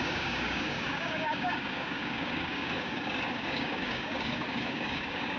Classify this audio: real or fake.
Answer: fake